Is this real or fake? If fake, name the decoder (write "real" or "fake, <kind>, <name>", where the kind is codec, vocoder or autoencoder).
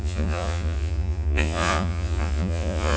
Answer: fake, vocoder, Vocos